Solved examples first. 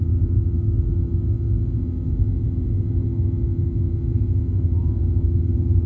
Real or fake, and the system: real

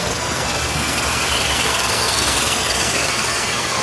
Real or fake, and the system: fake, codec, SNAC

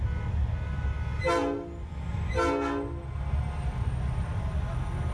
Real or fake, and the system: real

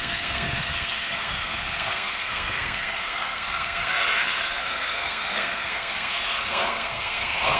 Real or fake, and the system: fake, codec, SNAC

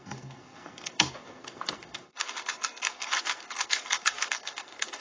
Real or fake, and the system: fake, codec, SNAC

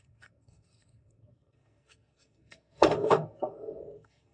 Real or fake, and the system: fake, codec, SNAC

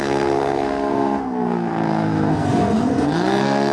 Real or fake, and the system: fake, codec, SNAC